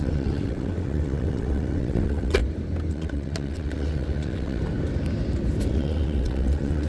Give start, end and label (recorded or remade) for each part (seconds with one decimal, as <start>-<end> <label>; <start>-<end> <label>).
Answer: 0.0-2.4 remade; 2.4-2.9 recorded; 2.9-4.6 remade; 4.6-5.7 recorded; 5.7-6.9 remade